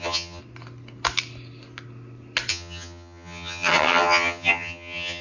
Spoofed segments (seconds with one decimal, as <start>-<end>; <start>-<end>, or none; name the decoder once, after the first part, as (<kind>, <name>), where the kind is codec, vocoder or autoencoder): 0.0-0.4 (vocoder, HiFi-GAN); 2.5-5.2